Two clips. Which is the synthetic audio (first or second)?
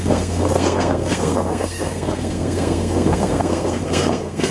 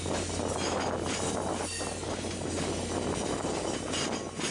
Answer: first